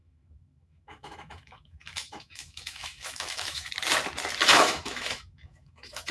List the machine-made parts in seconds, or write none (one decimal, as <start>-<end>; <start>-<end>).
0.0-3.7; 4.5-6.1